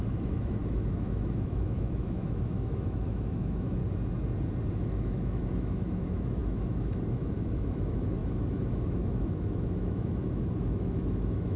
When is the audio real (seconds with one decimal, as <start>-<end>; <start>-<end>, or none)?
3.8-4.7